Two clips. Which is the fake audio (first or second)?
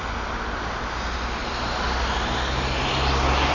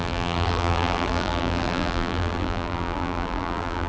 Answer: second